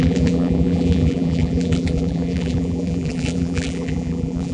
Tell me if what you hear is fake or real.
fake